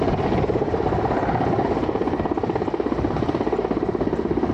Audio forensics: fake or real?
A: real